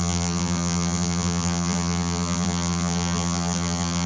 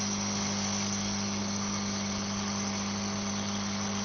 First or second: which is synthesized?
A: first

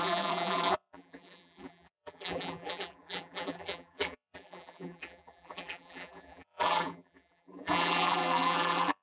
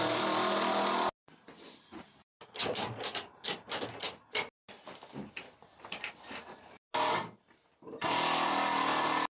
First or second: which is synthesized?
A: first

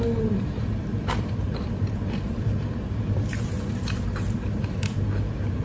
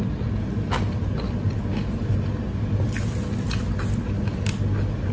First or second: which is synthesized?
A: first